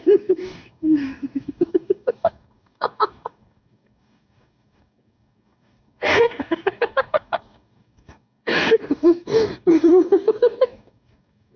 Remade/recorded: remade